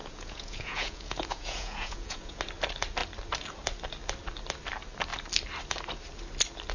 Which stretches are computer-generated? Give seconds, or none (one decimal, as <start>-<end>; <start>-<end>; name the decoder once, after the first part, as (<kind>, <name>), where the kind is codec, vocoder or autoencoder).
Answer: 0.0-2.4 (vocoder, Vocos)